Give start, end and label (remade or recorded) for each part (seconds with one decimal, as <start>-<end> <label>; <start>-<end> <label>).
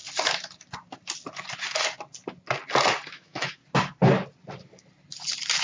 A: 0.0-3.1 recorded; 3.1-3.6 remade; 3.6-5.6 recorded